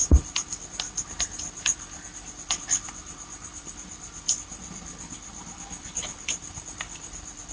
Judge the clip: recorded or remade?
remade